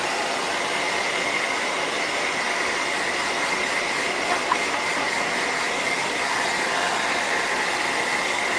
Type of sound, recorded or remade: recorded